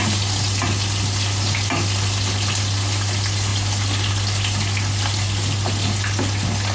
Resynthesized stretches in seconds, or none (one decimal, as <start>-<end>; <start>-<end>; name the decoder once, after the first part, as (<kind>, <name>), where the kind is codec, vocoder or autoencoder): none